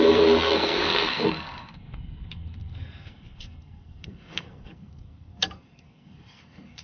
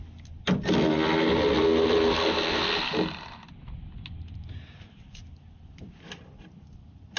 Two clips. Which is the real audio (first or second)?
second